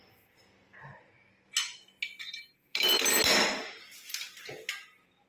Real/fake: real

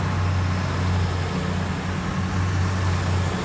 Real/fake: real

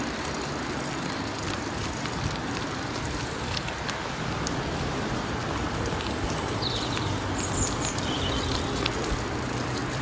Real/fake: fake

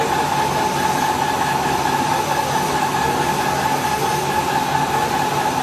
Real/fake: real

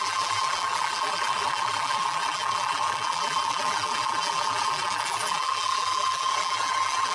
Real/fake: fake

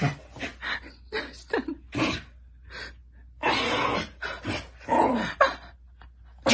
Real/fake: real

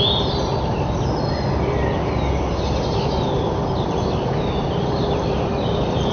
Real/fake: real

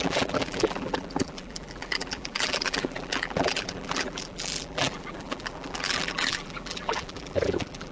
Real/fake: fake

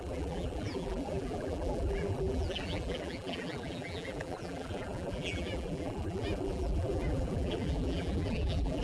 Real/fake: fake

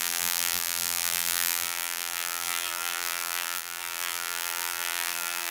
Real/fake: fake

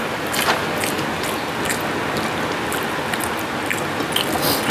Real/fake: real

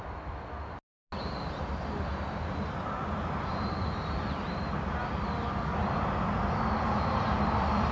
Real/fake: real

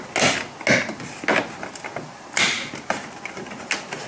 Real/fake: real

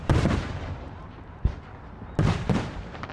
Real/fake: fake